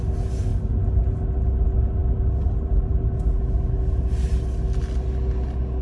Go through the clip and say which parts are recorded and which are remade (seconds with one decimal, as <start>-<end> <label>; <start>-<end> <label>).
0.0-5.8 recorded